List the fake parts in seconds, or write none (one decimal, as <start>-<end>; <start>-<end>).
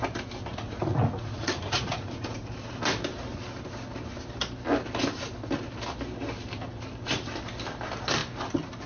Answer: 0.5-2.5